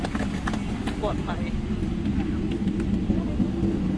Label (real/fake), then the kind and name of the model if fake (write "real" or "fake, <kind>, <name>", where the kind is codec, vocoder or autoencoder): real